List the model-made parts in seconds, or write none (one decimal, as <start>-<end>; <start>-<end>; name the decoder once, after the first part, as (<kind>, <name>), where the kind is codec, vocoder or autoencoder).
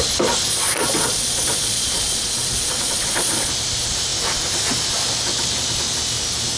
0.5-3.5 (vocoder, Vocos)